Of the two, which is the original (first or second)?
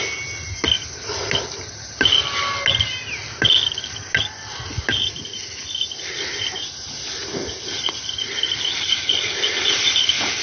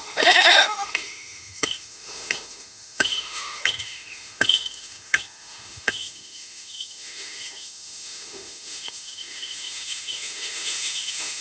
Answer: first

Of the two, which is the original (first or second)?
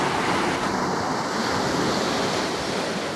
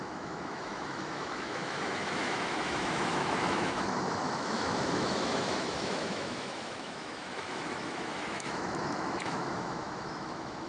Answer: first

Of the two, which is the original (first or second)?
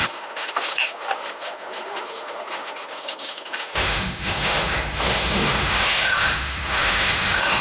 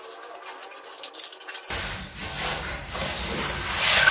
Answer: second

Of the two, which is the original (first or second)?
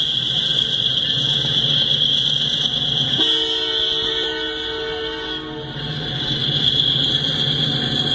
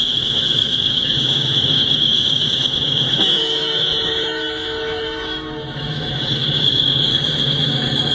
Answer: first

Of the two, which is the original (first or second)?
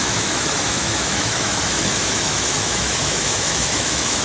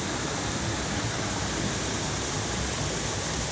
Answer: second